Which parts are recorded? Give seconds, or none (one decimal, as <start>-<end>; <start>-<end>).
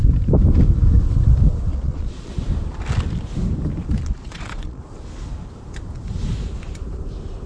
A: 0.0-1.7; 2.3-4.0; 4.8-7.5